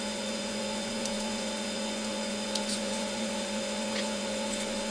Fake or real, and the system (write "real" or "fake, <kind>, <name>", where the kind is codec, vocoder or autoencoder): fake, vocoder, Vocos